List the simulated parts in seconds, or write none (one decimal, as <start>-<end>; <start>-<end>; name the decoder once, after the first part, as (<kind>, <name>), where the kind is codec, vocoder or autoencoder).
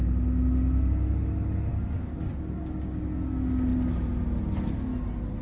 1.7-3.0 (codec, DAC)